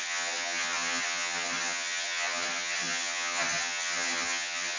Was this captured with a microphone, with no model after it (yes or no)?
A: no